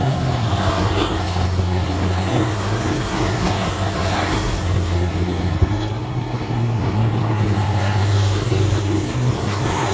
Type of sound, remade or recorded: remade